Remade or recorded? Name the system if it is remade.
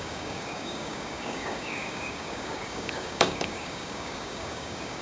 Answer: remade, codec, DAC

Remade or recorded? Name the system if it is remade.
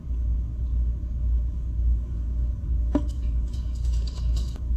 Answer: remade, codec, DAC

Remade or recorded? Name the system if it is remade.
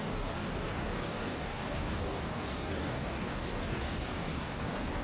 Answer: remade, codec, DAC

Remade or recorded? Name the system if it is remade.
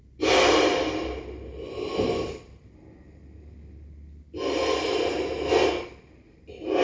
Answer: recorded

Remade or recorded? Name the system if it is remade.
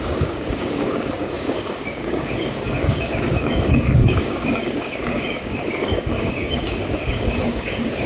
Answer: remade, codec, DAC